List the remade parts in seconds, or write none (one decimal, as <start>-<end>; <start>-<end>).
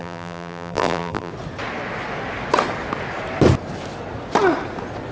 0.0-1.3